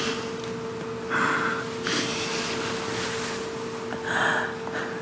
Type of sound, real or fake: real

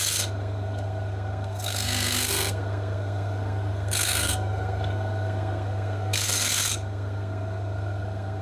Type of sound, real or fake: fake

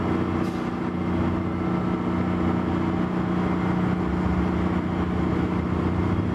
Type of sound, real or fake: real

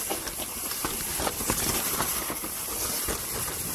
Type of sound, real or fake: real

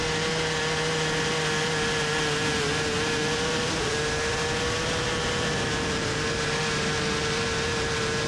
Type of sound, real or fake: real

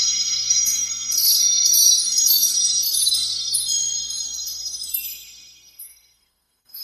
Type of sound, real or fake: fake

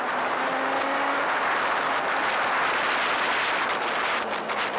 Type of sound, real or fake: real